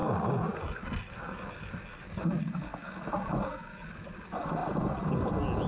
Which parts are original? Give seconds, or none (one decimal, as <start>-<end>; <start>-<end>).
0.0-5.7